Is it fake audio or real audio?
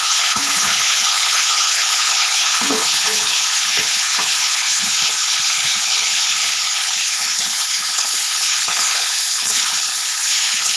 fake